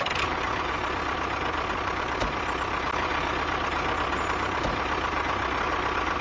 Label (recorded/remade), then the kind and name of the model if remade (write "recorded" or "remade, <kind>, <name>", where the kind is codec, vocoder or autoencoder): recorded